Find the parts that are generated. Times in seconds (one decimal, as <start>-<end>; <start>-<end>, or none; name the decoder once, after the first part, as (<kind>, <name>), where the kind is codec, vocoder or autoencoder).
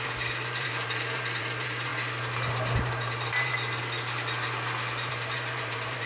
0.0-1.9 (vocoder, BigVGAN v2); 2.5-3.5; 5.1-6.1